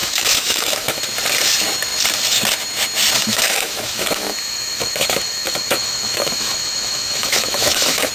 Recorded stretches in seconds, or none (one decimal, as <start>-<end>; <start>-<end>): 1.0-3.2